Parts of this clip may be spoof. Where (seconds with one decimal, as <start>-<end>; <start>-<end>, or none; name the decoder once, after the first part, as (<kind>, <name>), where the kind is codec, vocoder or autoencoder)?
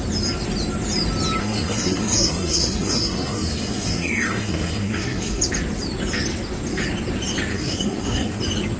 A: 1.4-5.4 (codec, SNAC); 7.5-8.4